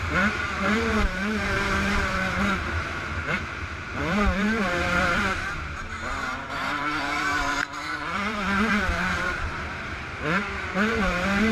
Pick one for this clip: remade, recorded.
remade